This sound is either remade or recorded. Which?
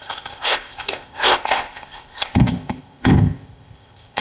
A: remade